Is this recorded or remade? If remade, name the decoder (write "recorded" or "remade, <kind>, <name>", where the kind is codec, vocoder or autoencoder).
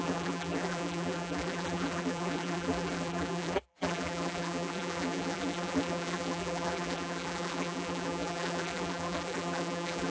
remade, vocoder, BigVGAN v2